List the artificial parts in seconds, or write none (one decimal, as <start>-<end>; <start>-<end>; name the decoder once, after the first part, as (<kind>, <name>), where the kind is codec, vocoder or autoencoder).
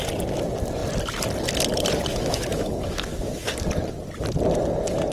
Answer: 2.1-3.5 (autoencoder, DAC-VAE)